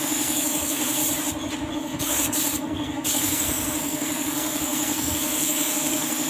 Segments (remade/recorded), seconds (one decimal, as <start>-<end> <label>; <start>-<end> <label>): 0.0-1.0 remade; 1.0-1.7 recorded; 1.7-6.3 remade